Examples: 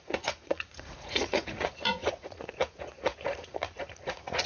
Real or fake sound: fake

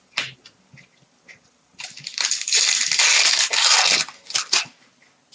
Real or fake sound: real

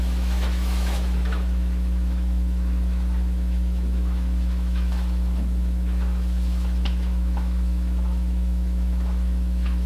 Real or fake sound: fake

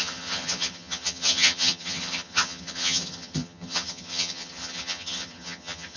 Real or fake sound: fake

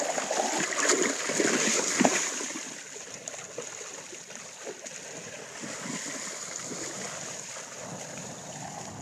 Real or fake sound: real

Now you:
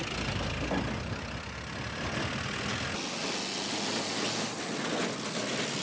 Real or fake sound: real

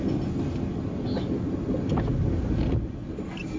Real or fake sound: real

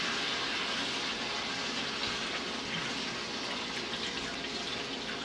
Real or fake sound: real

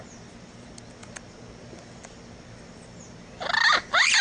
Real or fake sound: real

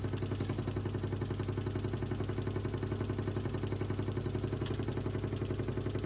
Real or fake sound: real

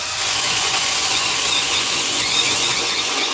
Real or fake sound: fake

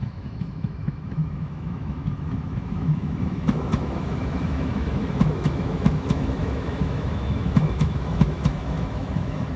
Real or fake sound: fake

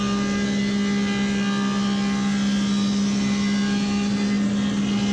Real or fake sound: real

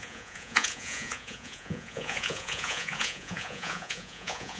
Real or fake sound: fake